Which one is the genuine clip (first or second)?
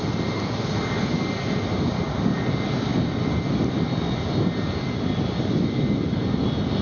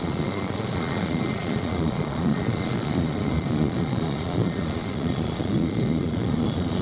first